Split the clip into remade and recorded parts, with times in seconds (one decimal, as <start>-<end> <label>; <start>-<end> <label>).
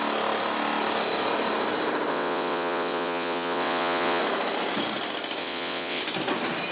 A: 0.0-2.1 recorded; 2.1-4.2 remade; 4.2-5.4 recorded; 5.4-6.0 remade; 6.0-6.7 recorded